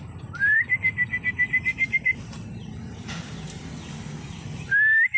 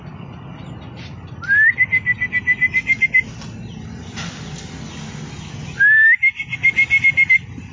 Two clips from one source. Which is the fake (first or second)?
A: first